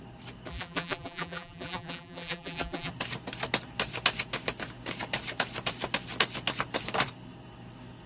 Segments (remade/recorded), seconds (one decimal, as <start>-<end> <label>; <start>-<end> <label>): 0.0-0.5 recorded; 0.5-2.9 remade; 2.9-8.1 recorded